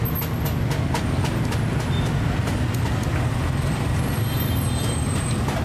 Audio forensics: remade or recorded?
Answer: recorded